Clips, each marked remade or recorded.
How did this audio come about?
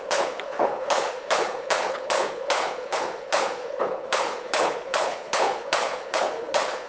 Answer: remade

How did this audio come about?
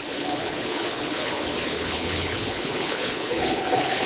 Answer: remade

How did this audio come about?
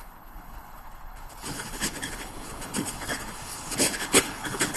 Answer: remade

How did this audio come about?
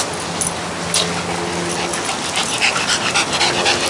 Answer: recorded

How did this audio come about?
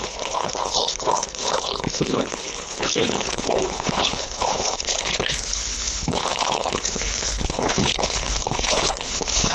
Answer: remade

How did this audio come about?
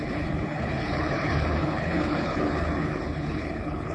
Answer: remade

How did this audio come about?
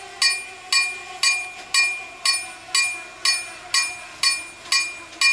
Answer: recorded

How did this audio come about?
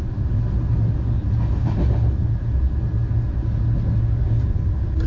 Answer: recorded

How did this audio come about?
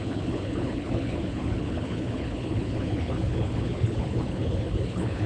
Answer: remade